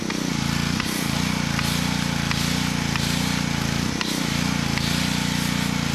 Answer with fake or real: real